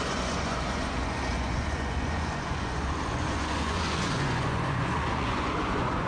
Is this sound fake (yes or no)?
yes